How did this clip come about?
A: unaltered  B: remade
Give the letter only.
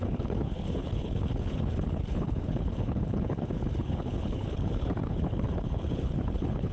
B